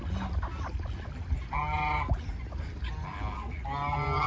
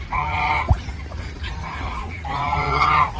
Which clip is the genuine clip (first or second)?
first